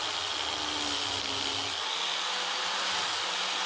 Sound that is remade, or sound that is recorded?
recorded